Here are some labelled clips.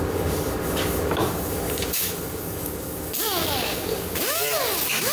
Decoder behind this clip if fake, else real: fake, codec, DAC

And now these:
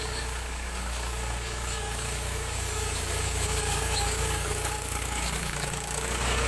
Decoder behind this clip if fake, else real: fake, codec, DAC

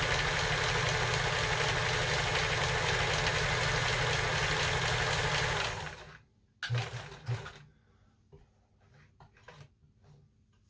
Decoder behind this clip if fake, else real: real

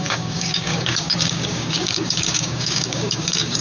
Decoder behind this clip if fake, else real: fake, codec, DAC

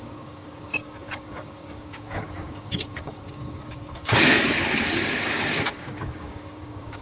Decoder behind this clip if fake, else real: fake, codec, DAC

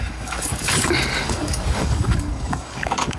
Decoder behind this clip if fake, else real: fake, codec, DAC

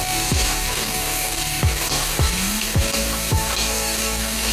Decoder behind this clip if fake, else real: fake, codec, DAC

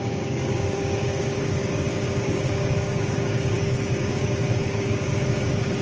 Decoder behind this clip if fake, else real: fake, codec, DAC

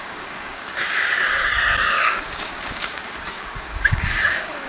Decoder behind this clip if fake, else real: fake, codec, DAC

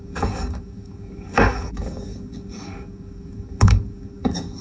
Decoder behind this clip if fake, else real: fake, codec, DAC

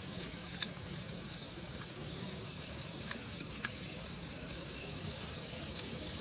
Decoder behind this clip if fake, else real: fake, codec, DAC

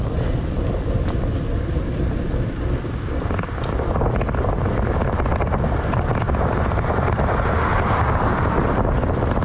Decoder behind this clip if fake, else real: real